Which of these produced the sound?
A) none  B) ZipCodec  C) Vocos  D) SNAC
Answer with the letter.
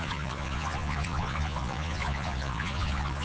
C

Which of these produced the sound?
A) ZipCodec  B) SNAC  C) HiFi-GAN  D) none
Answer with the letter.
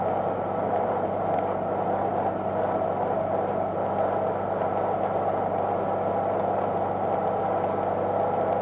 D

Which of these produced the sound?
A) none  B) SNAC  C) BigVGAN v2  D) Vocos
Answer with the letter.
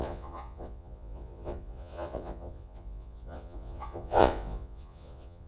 D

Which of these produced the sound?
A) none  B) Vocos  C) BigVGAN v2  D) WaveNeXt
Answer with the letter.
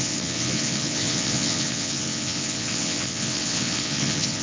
D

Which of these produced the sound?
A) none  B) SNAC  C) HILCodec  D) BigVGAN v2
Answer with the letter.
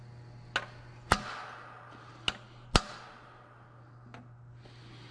A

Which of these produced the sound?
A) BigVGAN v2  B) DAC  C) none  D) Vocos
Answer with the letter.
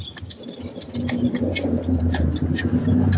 C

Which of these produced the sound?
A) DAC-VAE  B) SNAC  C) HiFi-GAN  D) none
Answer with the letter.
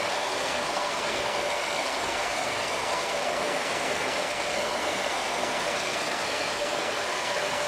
B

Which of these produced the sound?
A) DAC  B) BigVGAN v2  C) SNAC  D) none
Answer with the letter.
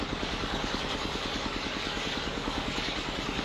A